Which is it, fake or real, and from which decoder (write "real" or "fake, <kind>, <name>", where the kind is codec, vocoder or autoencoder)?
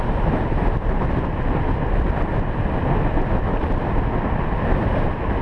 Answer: real